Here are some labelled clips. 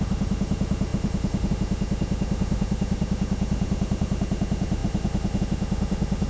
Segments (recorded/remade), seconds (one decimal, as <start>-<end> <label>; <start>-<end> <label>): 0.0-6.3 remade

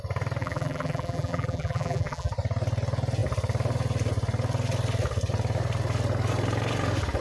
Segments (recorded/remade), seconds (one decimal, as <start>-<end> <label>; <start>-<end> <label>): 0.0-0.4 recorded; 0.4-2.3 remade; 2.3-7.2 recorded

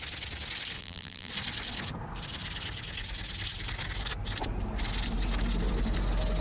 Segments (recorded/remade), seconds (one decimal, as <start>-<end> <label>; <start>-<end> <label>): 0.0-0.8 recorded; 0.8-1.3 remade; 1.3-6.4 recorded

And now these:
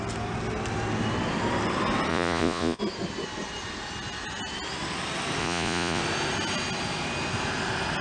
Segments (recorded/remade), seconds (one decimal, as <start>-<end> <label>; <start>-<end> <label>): 0.0-2.1 recorded; 2.1-2.8 remade; 2.8-5.4 recorded; 5.4-6.0 remade; 6.0-8.0 recorded

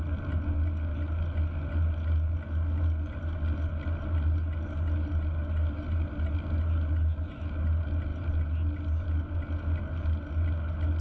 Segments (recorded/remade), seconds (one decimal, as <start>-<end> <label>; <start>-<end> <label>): 0.0-11.0 recorded